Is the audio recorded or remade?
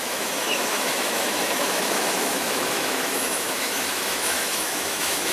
remade